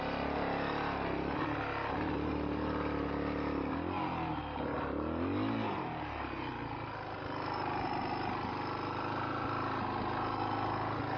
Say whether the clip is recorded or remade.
recorded